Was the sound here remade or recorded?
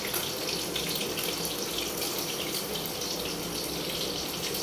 recorded